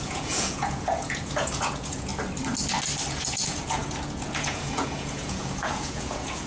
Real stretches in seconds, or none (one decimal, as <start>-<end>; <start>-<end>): 2.1-3.1